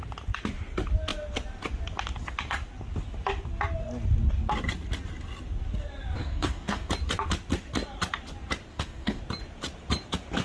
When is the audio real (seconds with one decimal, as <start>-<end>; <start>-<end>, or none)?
0.0-6.2; 6.9-8.7; 9.2-10.4